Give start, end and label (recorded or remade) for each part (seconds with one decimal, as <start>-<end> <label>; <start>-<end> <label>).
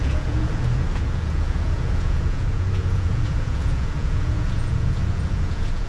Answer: 0.0-5.9 remade